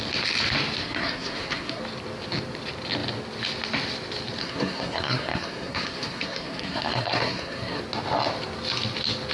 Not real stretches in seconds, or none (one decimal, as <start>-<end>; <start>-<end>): 0.8-1.8; 4.4-7.8